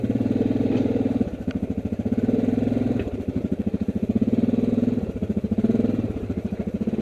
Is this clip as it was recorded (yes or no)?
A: no